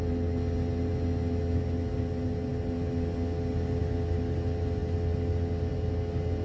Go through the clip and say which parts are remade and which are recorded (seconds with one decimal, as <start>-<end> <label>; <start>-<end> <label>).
0.0-6.4 recorded